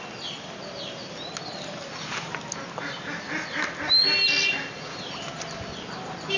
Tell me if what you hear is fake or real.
real